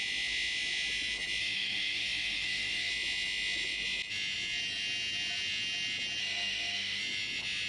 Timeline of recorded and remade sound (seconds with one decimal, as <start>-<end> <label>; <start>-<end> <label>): 0.0-1.4 recorded; 1.4-2.9 remade; 2.9-6.2 recorded; 6.2-7.0 remade; 7.0-7.7 recorded